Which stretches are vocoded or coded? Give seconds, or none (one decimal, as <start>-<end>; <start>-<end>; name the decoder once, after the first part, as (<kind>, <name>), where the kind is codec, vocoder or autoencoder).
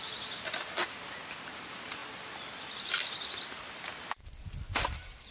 none